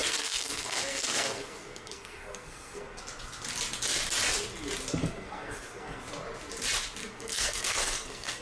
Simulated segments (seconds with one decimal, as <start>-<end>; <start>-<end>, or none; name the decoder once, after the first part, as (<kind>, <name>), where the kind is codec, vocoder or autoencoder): 0.0-3.0 (codec, SNAC); 5.0-6.0; 7.0-8.4